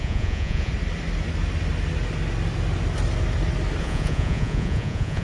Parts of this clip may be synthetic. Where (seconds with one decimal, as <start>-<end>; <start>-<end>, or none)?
0.0-0.7; 3.8-5.2

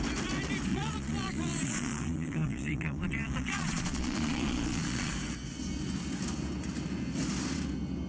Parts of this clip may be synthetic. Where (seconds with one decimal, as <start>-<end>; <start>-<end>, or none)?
0.7-5.1

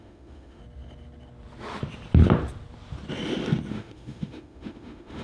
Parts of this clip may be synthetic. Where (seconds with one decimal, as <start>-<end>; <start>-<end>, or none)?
0.0-0.6; 3.7-5.2

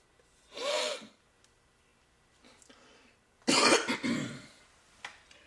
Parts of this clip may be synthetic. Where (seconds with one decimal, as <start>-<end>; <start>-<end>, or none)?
0.7-1.2

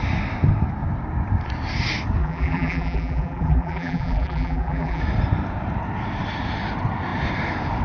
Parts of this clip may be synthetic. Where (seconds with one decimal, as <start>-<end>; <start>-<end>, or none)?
2.2-5.0

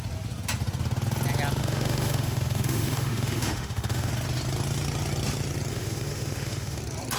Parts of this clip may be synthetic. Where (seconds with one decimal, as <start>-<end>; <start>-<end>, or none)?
1.6-4.1; 5.7-6.8

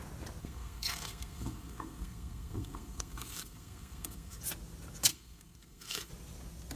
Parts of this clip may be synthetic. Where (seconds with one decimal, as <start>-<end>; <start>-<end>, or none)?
0.4-4.4; 5.1-6.1